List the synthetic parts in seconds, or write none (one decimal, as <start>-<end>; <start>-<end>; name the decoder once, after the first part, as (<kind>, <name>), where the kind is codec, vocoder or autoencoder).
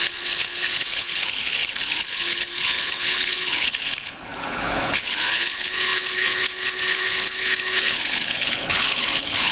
0.0-9.5 (codec, HILCodec)